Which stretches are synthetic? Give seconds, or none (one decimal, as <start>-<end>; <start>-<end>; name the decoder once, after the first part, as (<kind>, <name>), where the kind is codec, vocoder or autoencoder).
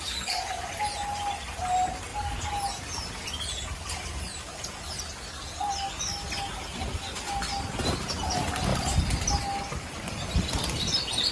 none